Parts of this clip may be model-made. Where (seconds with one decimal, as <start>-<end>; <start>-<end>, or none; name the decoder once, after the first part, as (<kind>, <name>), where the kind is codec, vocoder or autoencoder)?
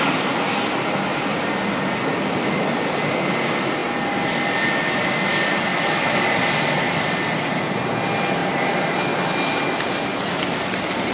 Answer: none